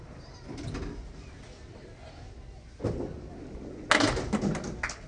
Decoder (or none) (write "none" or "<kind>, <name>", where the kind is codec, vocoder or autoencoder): none